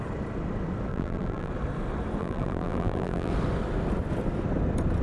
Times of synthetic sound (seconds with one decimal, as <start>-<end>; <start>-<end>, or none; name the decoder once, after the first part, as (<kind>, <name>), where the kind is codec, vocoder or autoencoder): 0.9-1.5 (vocoder, BigVGAN v2); 2.2-3.3